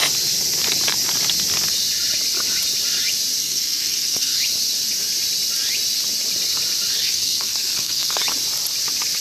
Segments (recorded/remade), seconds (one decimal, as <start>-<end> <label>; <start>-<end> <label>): 0.0-3.4 recorded; 3.4-4.4 remade; 4.4-7.0 recorded; 7.0-8.2 remade; 8.2-9.2 recorded